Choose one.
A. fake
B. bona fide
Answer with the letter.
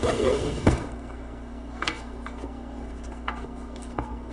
A